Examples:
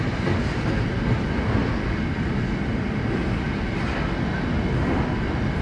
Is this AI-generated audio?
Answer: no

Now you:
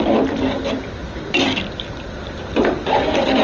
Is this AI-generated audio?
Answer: yes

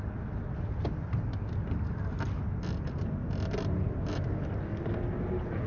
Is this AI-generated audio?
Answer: no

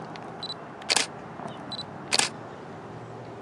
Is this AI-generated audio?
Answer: no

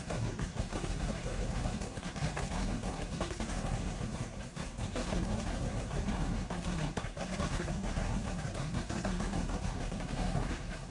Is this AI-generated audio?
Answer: yes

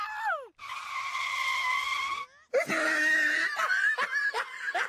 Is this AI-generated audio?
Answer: no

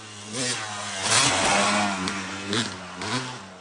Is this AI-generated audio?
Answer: no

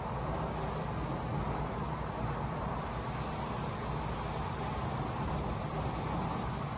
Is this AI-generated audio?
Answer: no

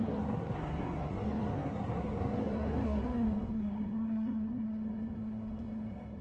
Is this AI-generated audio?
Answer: yes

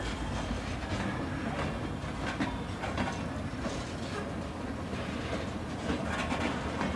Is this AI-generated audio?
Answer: no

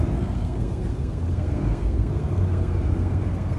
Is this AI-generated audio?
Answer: yes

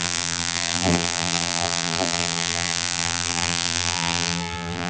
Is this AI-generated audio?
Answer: yes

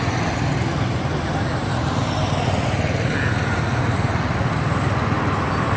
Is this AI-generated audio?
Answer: no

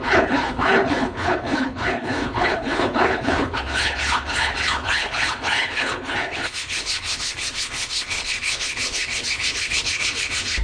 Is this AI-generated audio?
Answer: yes